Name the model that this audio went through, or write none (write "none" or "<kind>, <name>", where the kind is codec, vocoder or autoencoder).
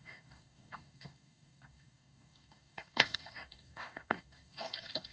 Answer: codec, DAC